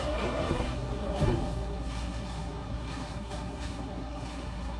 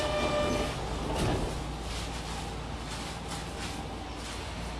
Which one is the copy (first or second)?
first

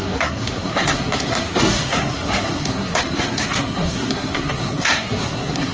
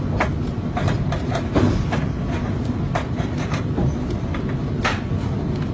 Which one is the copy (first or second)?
first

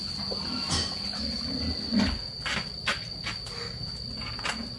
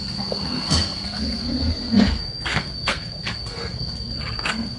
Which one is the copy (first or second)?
second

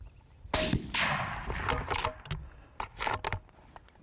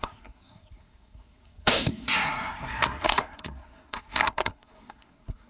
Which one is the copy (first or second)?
second